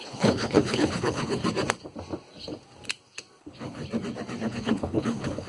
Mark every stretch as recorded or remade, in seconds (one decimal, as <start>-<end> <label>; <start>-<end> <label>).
0.0-1.4 remade; 1.4-3.4 recorded; 3.4-3.8 remade; 3.8-4.4 recorded; 4.4-5.5 remade